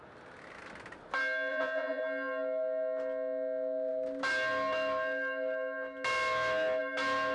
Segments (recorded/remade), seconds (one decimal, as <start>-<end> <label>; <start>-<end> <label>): 0.0-1.5 recorded; 1.5-2.0 remade; 2.0-7.3 recorded